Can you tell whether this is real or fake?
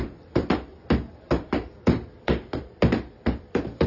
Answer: fake